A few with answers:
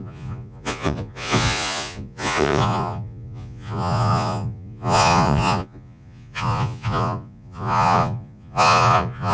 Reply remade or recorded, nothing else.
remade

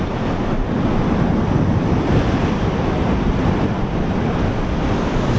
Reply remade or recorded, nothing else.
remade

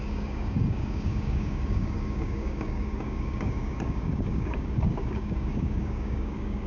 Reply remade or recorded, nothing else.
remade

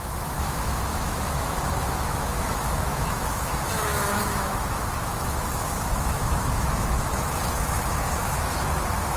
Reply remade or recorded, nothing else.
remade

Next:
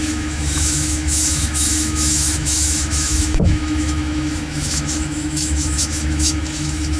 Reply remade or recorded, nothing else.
remade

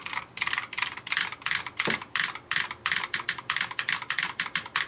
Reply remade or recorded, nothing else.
recorded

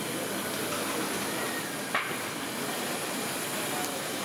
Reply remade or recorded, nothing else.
recorded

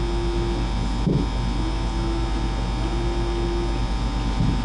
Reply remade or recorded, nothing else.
recorded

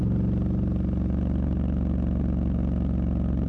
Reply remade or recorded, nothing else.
recorded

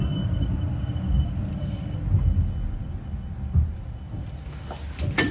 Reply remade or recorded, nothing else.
recorded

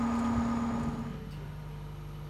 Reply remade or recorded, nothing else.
recorded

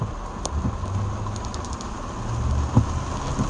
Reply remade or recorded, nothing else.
recorded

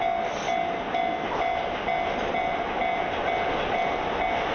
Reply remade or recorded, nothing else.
recorded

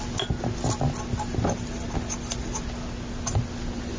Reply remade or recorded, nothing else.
recorded